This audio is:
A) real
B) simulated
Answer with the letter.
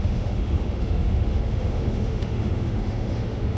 B